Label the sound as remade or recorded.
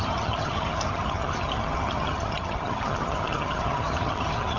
remade